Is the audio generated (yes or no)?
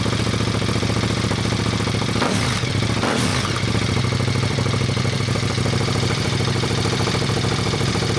yes